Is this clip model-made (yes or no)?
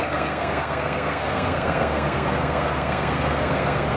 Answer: yes